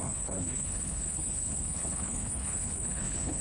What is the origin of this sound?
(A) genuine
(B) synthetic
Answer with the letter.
B